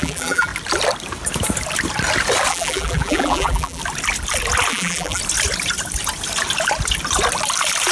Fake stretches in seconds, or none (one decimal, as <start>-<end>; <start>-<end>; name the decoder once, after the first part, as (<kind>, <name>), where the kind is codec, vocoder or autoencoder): 0.0-0.5 (vocoder, BigVGAN v2); 2.5-3.8; 4.7-5.2